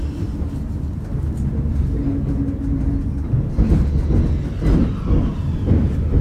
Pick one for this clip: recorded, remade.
recorded